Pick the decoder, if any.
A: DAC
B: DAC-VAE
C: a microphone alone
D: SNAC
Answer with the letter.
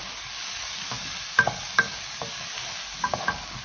A